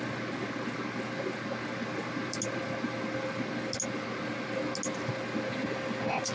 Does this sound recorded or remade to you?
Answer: recorded